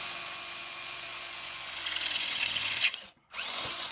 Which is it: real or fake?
fake